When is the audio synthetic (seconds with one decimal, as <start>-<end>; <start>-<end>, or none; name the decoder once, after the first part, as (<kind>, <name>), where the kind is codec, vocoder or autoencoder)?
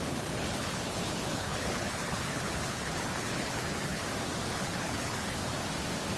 0.0-4.0 (codec, HILCodec); 4.5-5.4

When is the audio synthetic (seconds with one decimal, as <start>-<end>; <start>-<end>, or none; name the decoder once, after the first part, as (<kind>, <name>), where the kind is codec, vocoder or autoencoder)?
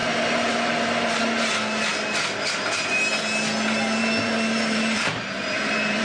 0.0-1.2 (vocoder, BigVGAN v2); 4.0-6.0